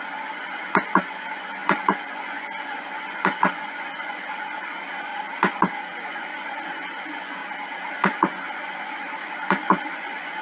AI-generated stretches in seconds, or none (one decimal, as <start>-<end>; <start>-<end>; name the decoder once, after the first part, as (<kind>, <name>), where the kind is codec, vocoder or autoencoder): 0.0-5.1 (vocoder, Vocos); 6.0-7.4; 7.9-10.4